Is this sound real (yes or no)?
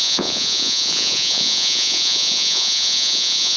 no